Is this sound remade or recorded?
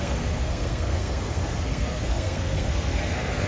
remade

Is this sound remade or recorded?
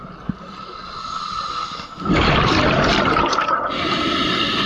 recorded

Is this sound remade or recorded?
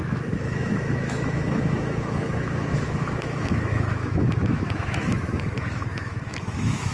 remade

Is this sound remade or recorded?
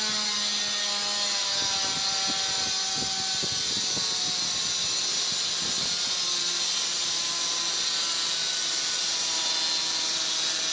recorded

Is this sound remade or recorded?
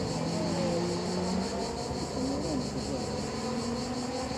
recorded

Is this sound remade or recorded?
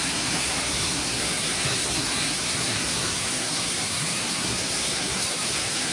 remade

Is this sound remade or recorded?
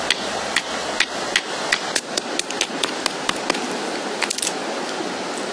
recorded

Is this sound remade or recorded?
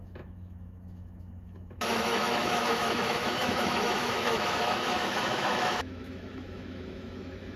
remade